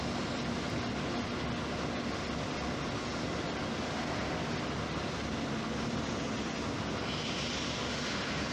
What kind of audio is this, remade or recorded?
recorded